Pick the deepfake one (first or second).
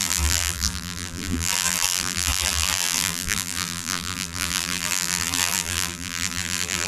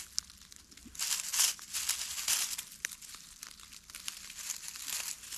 first